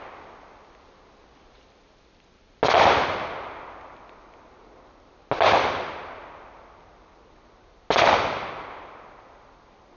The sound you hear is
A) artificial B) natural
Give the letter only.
B